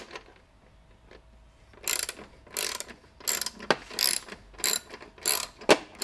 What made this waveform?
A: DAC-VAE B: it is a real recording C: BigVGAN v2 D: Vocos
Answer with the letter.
B